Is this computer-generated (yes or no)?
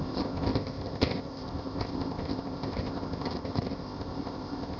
yes